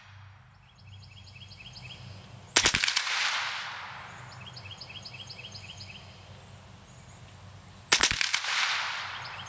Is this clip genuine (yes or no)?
yes